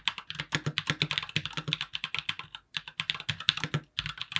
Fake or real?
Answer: real